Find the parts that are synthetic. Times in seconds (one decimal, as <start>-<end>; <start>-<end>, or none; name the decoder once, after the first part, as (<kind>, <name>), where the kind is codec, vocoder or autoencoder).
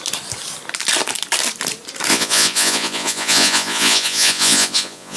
2.1-5.2 (vocoder, Vocos)